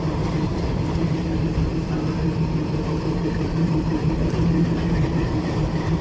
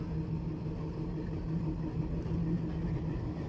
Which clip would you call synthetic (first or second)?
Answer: first